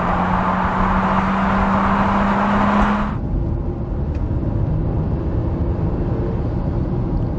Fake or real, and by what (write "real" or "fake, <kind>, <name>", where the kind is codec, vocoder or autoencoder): real